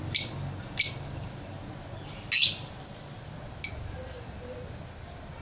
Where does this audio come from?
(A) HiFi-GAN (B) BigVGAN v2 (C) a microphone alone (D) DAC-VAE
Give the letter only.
C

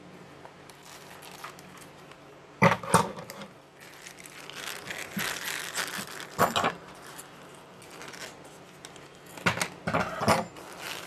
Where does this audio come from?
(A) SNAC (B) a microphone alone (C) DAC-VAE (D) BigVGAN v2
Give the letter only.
B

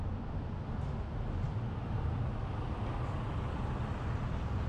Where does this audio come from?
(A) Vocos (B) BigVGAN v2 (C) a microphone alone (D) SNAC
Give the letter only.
C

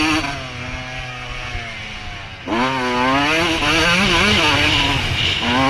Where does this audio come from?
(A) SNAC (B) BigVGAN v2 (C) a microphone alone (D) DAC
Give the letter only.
C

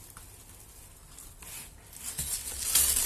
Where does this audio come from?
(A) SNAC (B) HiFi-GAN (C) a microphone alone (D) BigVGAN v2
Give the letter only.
C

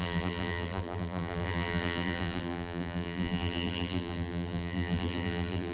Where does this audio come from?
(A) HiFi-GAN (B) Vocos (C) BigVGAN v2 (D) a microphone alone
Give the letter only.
C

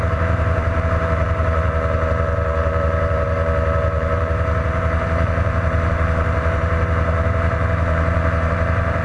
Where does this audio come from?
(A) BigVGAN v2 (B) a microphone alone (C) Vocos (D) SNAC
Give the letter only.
A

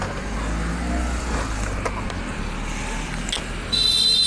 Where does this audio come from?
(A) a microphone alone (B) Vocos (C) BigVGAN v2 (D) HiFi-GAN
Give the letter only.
A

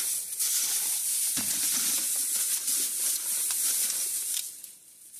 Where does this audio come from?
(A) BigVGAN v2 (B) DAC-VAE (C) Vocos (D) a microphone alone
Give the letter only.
D